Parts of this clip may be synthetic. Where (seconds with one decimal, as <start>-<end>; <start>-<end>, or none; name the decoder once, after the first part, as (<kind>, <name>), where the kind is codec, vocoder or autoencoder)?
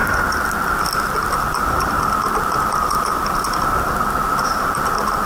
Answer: none